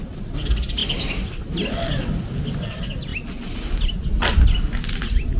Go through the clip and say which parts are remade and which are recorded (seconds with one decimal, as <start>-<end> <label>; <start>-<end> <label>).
0.0-5.4 recorded